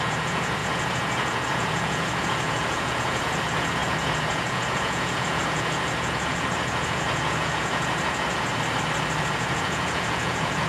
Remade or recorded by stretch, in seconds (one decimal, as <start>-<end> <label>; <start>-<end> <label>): 0.0-8.5 remade; 8.5-9.2 recorded; 9.2-10.7 remade